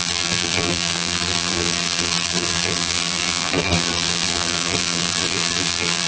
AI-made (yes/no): yes